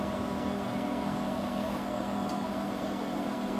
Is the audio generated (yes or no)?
yes